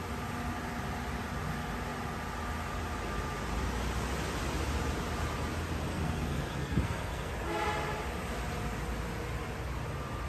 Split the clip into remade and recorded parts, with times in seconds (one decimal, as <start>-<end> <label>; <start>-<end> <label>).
0.0-5.9 recorded; 5.9-7.3 remade; 7.3-10.3 recorded